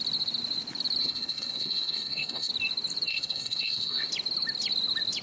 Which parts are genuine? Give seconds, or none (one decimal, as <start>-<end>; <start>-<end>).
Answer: 0.0-1.0; 2.5-3.1; 4.1-5.2